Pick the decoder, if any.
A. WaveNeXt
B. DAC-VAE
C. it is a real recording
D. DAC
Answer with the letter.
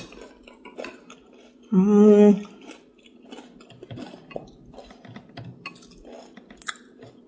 C